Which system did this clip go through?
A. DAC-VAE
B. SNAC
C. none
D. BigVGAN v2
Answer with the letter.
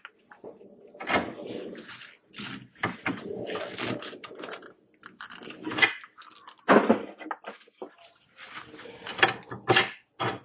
C